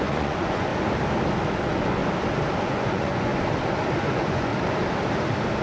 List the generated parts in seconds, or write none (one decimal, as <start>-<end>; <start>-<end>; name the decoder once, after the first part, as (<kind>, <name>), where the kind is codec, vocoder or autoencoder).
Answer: 0.0-0.7 (vocoder, Vocos); 1.6-2.0; 2.6-3.3; 4.0-4.5